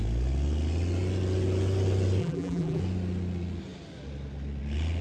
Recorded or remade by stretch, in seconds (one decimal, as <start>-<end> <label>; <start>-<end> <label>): 0.0-2.2 recorded; 2.2-2.8 remade; 2.8-5.0 recorded

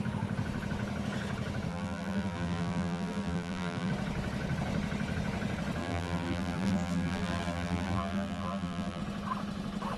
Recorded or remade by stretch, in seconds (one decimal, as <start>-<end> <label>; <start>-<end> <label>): 0.0-1.7 recorded; 1.7-3.9 remade; 3.9-5.8 recorded; 5.8-9.0 remade; 9.0-10.0 recorded